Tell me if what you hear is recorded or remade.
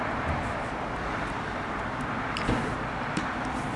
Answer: remade